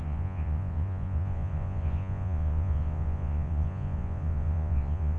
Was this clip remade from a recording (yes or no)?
yes